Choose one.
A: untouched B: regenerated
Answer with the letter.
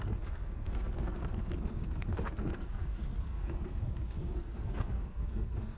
B